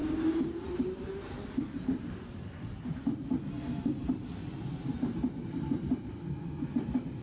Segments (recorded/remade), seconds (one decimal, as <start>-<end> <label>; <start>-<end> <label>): 0.0-7.2 recorded